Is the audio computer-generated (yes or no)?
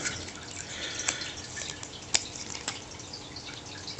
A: no